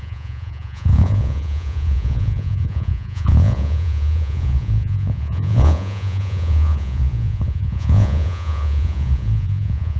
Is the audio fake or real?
fake